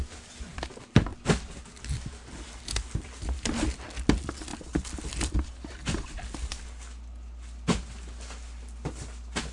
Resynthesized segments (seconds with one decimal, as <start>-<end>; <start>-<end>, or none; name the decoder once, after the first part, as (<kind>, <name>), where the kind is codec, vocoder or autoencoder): 4.5-6.6 (vocoder, BigVGAN v2)